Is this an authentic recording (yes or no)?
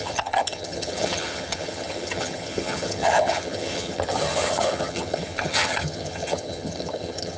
no